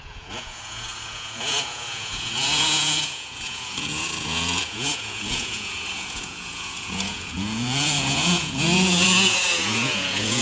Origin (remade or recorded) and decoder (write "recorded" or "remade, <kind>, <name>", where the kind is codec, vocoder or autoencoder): remade, vocoder, Vocos